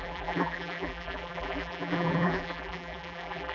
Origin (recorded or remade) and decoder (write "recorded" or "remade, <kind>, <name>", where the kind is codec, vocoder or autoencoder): remade, vocoder, BigVGAN v2